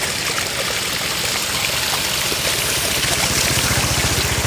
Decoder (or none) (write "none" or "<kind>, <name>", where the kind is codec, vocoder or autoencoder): none